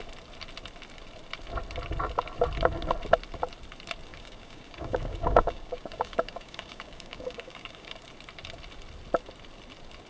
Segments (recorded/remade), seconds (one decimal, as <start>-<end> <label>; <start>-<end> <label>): 0.0-4.1 recorded; 4.1-8.0 remade; 8.0-10.1 recorded